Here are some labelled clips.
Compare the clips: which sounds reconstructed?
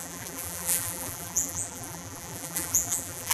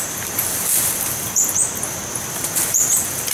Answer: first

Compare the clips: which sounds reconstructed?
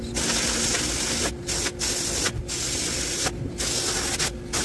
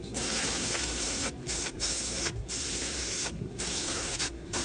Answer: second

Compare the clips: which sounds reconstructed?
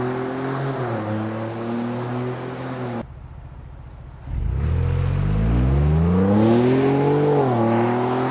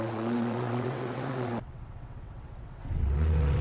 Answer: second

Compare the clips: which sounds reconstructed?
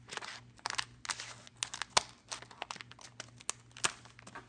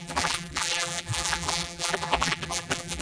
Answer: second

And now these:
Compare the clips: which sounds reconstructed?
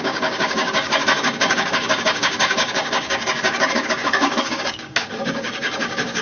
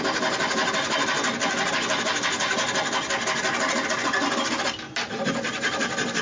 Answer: first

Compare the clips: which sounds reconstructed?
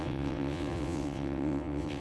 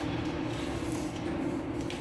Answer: first